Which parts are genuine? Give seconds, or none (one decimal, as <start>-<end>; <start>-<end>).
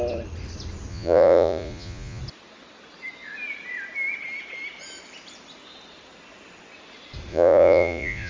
0.0-0.9; 2.2-7.3